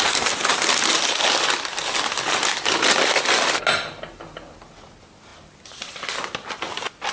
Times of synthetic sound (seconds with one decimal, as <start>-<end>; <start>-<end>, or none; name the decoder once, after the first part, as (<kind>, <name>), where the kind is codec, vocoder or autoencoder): 5.3-7.1 (vocoder, BigVGAN v2)